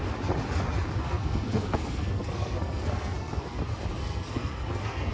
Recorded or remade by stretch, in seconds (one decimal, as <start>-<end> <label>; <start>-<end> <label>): 0.0-1.0 recorded; 1.0-3.6 remade; 3.6-4.0 recorded; 4.0-5.1 remade